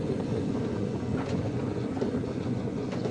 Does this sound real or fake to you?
fake